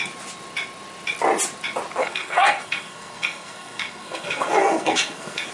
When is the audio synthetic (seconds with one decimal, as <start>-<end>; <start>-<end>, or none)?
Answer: 2.0-5.5